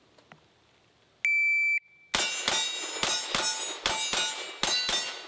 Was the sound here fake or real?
real